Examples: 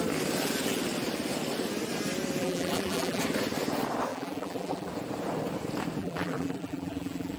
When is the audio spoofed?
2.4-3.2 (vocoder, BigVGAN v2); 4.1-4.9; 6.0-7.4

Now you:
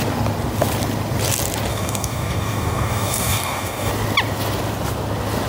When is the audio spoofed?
1.7-3.9 (codec, DAC)

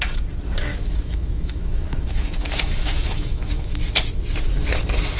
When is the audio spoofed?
0.7-3.8 (autoencoder, DAC-VAE)

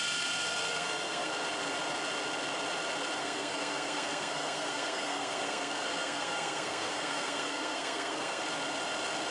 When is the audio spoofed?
0.7-1.3 (codec, SNAC); 3.2-8.4

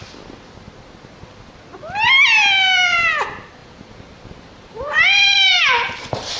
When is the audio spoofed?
3.6-6.4 (vocoder, BigVGAN v2)